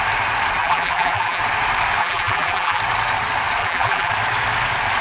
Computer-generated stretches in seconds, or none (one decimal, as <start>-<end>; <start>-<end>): 0.6-1.4; 2.0-2.8; 3.6-4.1